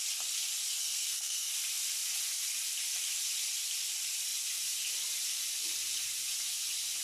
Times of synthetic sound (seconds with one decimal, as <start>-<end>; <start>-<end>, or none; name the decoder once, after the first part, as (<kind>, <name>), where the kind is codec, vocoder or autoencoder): 0.8-1.5 (codec, SNAC)